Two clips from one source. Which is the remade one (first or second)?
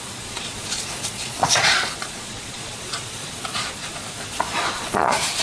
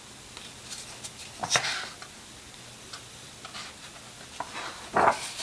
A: first